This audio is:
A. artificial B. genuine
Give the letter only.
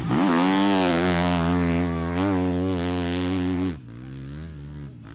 B